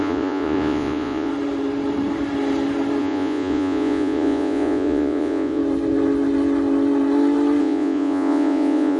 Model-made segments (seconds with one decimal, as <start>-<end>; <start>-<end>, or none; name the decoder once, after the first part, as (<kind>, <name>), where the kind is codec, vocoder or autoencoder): 0.0-1.3 (vocoder, Vocos); 3.0-5.6; 7.6-9.0